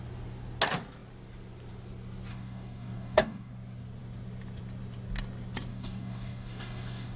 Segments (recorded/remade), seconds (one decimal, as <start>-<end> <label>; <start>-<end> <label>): 0.0-2.3 recorded; 2.3-3.5 remade; 3.5-5.7 recorded; 5.7-7.2 remade

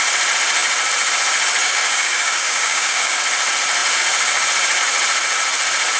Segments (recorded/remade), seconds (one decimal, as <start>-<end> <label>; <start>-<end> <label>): 0.0-1.6 recorded; 1.6-3.2 remade; 3.2-6.0 recorded

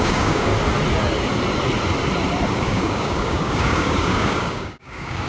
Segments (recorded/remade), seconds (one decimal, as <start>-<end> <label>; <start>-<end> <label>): 0.0-0.5 remade; 0.5-2.6 recorded; 2.6-5.3 remade